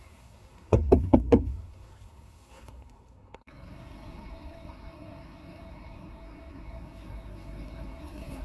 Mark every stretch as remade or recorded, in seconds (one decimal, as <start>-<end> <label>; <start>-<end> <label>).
0.0-8.4 remade